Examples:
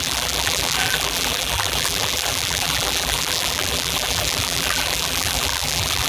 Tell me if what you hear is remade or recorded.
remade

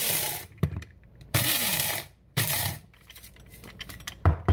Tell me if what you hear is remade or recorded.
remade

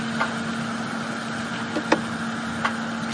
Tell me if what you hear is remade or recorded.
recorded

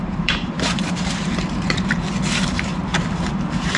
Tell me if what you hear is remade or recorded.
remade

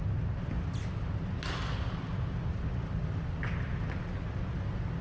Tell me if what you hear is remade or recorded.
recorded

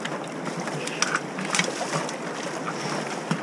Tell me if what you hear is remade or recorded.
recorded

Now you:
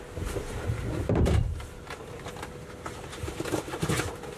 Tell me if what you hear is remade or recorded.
recorded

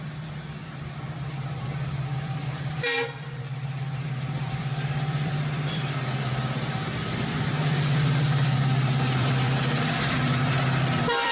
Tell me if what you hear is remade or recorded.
remade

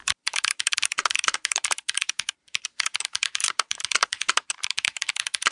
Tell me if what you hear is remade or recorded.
remade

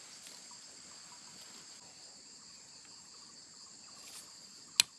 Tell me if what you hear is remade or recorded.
recorded